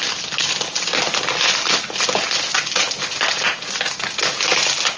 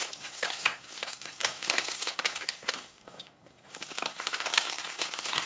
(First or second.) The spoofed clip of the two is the second